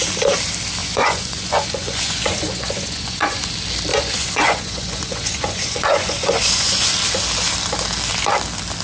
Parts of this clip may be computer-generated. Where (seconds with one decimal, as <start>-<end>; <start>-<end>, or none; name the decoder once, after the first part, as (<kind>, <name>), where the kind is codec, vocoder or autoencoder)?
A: 0.8-3.5 (vocoder, Vocos); 3.9-6.9